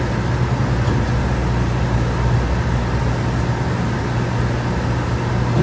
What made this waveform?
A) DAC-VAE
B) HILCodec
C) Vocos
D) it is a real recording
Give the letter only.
D